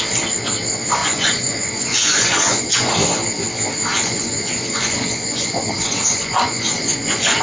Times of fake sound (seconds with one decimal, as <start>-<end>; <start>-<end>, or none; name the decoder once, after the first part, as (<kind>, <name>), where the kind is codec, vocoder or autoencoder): 1.0-2.9 (vocoder, Vocos); 3.9-7.4